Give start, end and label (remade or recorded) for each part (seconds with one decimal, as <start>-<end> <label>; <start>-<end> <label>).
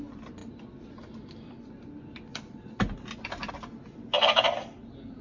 0.0-5.2 recorded